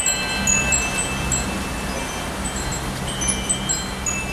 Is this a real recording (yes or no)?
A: yes